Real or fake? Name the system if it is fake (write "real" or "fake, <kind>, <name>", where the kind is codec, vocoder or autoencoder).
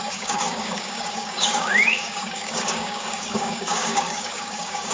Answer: fake, codec, DAC